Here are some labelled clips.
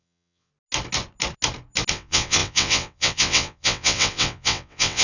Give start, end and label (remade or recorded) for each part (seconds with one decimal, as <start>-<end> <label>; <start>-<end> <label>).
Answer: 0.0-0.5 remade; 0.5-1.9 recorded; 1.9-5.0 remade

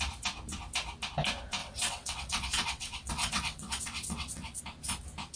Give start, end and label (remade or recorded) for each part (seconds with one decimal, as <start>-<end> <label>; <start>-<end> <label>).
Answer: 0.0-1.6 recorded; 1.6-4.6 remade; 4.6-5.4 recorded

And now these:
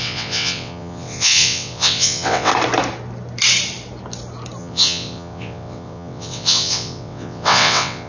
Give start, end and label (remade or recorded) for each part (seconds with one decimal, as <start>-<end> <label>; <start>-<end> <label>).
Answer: 0.0-2.5 remade; 2.5-4.6 recorded; 4.6-8.1 remade